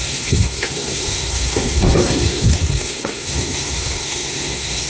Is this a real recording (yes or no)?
no